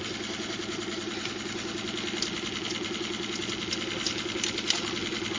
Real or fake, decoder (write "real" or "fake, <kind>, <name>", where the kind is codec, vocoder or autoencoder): real